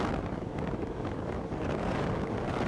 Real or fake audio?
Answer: fake